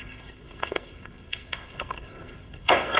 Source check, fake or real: fake